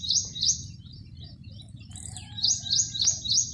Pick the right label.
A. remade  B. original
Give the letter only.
B